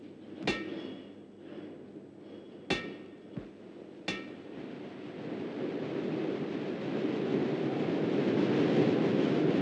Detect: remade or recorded recorded